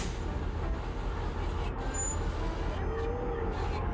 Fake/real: real